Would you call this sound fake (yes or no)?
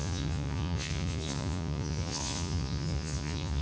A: yes